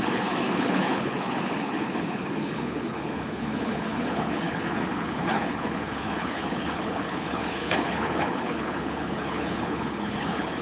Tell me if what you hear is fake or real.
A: fake